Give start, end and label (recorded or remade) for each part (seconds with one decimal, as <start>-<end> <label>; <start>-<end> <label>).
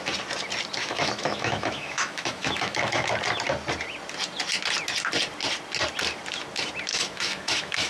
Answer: 0.0-0.8 recorded; 0.8-3.1 remade; 3.1-6.9 recorded; 6.9-7.9 remade